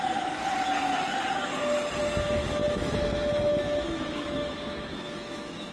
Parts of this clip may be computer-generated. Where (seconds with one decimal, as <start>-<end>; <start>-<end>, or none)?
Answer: 2.0-5.7

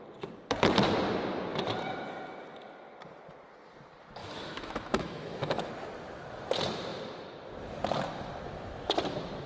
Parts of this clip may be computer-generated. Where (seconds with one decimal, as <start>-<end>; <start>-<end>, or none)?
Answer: 4.2-5.7

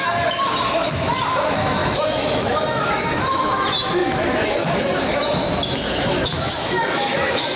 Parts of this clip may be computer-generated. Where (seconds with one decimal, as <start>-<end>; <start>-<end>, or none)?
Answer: 0.0-7.6

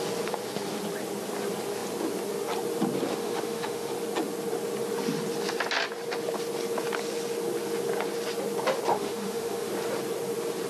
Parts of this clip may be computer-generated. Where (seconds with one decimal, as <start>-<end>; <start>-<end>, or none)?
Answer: 3.1-3.9; 8.9-9.7